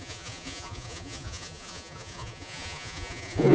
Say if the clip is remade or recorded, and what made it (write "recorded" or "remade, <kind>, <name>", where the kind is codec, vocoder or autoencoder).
remade, vocoder, Vocos